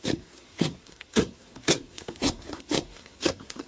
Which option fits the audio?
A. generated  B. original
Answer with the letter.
A